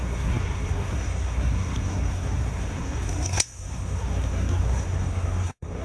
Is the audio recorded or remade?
remade